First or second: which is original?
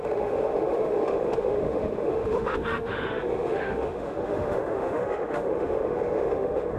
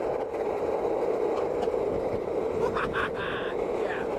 second